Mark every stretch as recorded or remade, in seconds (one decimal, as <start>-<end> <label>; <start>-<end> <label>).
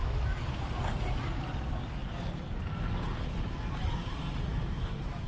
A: 0.0-0.8 remade; 0.8-4.5 recorded; 4.5-5.3 remade